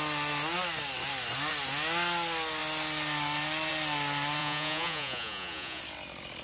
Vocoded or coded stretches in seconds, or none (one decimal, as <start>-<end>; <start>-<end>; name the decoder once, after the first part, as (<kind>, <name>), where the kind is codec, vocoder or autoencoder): 4.4-5.8 (vocoder, Vocos)